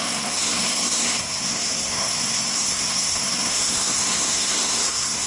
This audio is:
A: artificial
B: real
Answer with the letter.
A